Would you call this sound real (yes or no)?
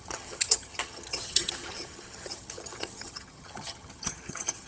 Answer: no